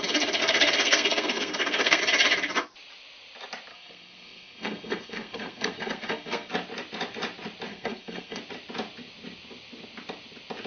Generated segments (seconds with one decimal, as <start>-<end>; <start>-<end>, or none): 0.4-2.0; 3.7-6.5; 7.7-8.4